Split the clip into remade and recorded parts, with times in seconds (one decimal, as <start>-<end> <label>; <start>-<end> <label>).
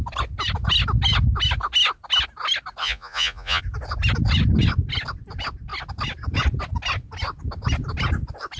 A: 0.0-2.8 recorded; 2.8-3.6 remade; 3.6-8.6 recorded